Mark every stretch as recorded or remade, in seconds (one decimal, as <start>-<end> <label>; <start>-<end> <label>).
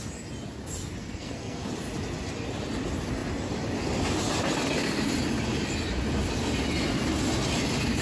0.0-1.0 recorded; 1.0-1.7 remade; 1.7-8.0 recorded